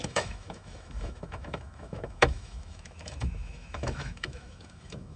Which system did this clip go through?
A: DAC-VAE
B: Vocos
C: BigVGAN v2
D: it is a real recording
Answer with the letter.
A